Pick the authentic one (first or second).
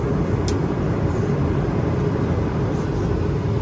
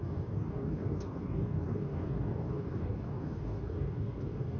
first